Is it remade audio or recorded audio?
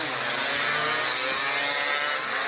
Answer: recorded